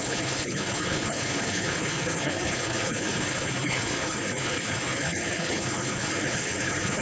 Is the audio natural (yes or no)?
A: no